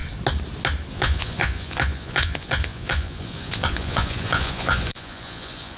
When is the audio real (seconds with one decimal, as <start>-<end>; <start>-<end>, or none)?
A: 0.0-0.9